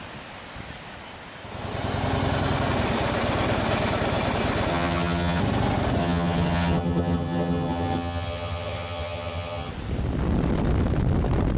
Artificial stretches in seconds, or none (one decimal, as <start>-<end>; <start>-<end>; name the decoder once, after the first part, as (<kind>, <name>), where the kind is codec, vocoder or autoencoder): 4.7-5.4 (vocoder, HiFi-GAN); 6.0-9.7